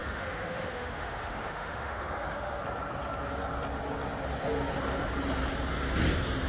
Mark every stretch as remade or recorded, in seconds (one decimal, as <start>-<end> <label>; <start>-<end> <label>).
0.0-2.6 remade; 2.6-6.5 recorded